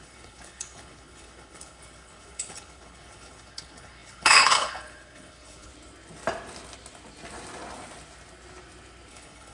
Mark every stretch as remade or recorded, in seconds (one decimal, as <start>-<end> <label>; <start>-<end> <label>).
0.0-5.7 remade; 5.7-9.1 recorded; 9.1-9.5 remade